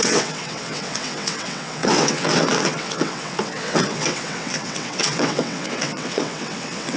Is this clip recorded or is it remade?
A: remade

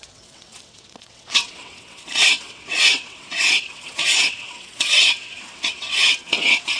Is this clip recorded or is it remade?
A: remade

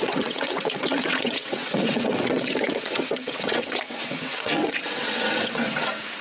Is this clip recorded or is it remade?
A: remade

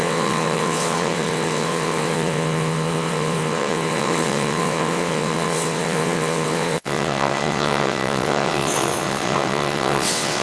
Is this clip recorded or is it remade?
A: remade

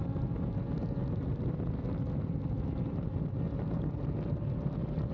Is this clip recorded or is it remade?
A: recorded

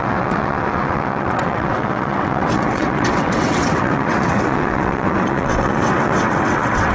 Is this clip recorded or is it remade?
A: remade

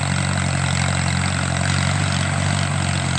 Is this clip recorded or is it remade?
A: recorded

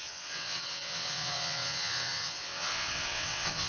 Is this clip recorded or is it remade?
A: remade